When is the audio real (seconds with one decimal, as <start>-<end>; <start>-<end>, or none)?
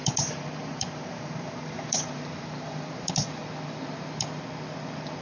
3.1-5.2